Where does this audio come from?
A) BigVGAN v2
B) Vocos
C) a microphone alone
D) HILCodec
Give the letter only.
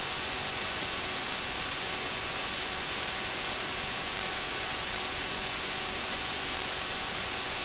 B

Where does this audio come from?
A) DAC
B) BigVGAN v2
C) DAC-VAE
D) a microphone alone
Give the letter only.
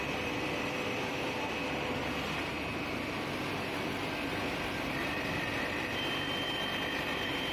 B